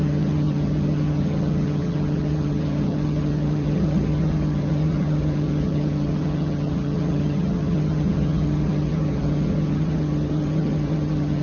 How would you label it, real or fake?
fake